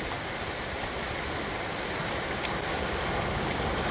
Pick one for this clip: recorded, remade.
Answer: recorded